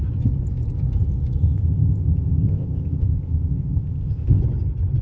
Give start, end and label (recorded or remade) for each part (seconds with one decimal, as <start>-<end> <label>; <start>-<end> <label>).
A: 0.0-1.4 recorded; 1.4-4.4 remade; 4.4-5.0 recorded